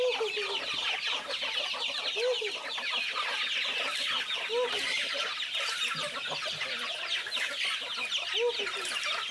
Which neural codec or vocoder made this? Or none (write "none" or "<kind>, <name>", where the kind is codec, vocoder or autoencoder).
none